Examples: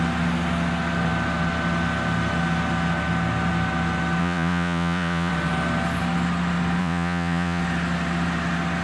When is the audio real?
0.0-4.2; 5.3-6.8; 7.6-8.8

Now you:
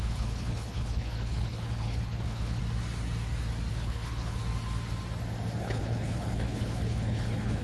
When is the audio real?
2.6-3.7; 4.4-5.6

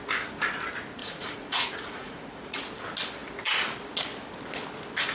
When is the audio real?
0.0-1.0; 2.6-5.1

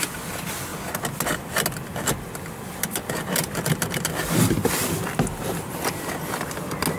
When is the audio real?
0.0-7.0

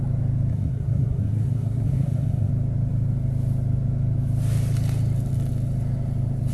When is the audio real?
0.0-0.5; 2.5-6.5

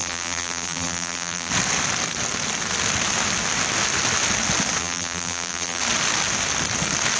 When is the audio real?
1.5-4.8; 5.8-7.2

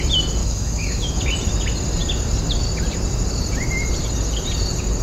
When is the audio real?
0.0-0.4; 1.2-5.0

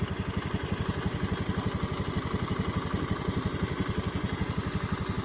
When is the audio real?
0.0-5.2